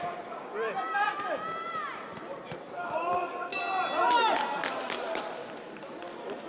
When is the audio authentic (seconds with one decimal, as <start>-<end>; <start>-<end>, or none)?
0.0-6.5